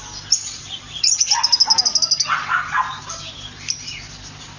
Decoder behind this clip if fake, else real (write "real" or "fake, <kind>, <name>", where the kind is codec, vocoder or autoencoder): real